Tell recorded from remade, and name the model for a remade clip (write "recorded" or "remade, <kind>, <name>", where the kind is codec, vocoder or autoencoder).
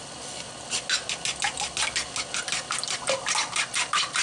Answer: recorded